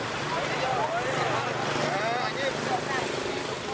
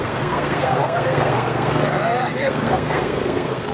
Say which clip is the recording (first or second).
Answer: first